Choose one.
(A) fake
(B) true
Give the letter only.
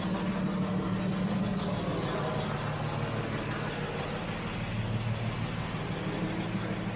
B